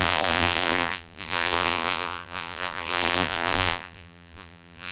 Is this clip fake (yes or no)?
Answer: yes